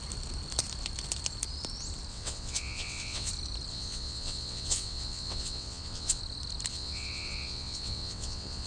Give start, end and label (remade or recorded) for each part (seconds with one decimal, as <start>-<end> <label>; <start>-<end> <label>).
0.0-2.1 recorded; 2.1-3.3 remade; 3.3-3.7 recorded; 3.7-6.2 remade; 6.2-6.7 recorded; 6.7-8.7 remade